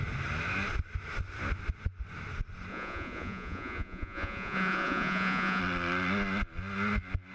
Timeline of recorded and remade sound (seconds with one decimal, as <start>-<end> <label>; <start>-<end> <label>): 0.0-2.7 recorded; 2.7-5.6 remade; 5.6-7.3 recorded